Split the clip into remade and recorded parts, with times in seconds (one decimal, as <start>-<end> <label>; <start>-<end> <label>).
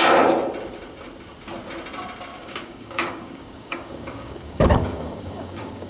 0.0-2.3 recorded; 2.3-5.9 remade